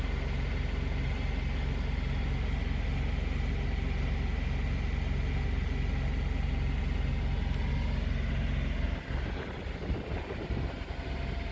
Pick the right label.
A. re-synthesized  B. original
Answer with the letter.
B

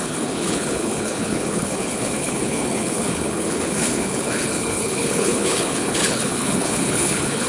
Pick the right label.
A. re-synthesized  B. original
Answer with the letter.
A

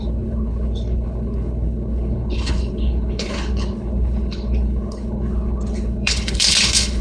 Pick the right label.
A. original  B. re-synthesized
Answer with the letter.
B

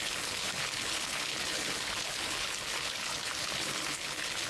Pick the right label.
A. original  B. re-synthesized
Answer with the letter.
B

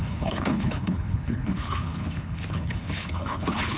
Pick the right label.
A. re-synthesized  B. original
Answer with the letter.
A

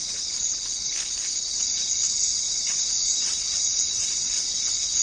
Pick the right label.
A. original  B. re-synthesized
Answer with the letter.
B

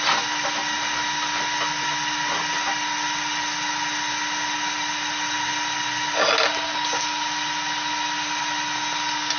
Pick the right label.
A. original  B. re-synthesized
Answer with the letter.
A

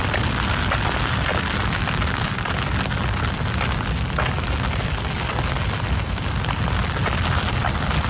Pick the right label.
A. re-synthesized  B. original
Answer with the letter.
B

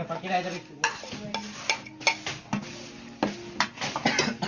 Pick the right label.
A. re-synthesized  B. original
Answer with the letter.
B